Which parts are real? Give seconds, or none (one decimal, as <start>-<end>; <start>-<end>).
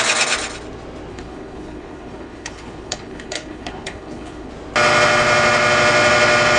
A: 0.0-1.1; 4.5-6.6